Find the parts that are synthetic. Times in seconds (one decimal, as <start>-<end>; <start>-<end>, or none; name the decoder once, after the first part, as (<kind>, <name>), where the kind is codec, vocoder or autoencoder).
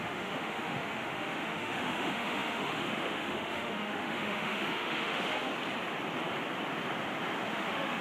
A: 0.0-5.5 (autoencoder, DAC-VAE); 7.5-8.0